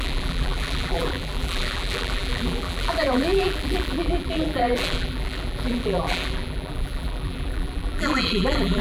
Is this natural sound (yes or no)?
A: no